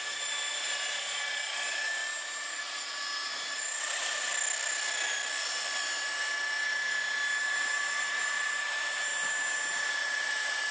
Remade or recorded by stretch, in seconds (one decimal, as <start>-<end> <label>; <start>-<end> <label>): 0.0-2.0 remade; 2.0-3.3 recorded; 3.3-4.3 remade; 4.3-7.4 recorded; 7.4-9.1 remade; 9.1-9.9 recorded; 9.9-10.7 remade

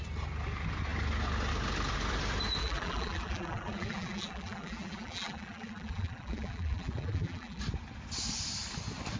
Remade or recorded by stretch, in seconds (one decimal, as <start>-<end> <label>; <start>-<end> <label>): 0.0-2.6 recorded; 2.6-7.6 remade; 7.6-9.2 recorded

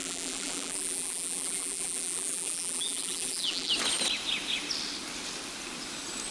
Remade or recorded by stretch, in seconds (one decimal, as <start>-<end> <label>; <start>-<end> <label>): 0.0-3.7 remade; 3.7-6.3 recorded

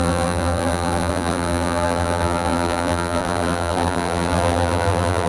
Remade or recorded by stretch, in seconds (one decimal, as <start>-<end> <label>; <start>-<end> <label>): 0.0-5.3 remade

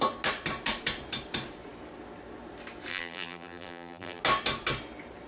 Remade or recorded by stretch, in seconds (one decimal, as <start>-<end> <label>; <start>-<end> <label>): 0.0-2.9 recorded; 2.9-4.2 remade; 4.2-5.3 recorded

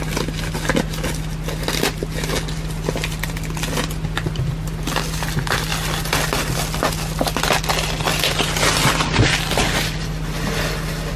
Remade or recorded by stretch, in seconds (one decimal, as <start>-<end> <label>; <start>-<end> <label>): 0.0-8.1 recorded; 8.1-10.1 remade; 10.1-11.2 recorded

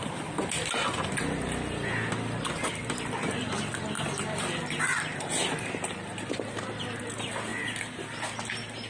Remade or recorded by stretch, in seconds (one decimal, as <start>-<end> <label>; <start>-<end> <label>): 0.0-8.9 recorded